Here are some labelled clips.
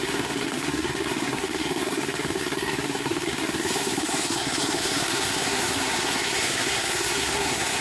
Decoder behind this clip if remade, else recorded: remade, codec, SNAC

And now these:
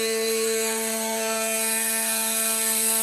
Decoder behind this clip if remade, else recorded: remade, codec, SNAC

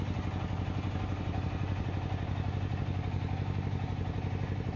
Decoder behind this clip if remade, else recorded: recorded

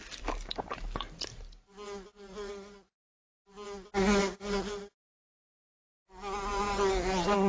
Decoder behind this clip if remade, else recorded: recorded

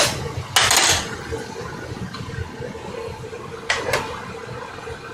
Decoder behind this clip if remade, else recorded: recorded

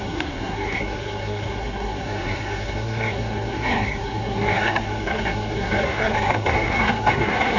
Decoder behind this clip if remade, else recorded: remade, codec, SNAC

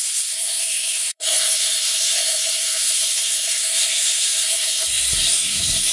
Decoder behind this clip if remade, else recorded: remade, codec, SNAC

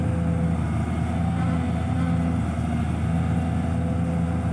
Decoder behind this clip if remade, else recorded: recorded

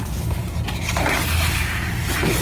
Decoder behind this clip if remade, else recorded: recorded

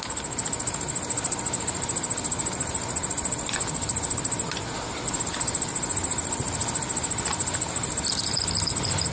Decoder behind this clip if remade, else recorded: recorded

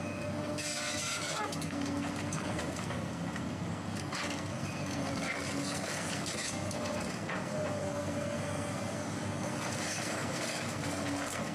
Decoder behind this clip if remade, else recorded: remade, codec, SNAC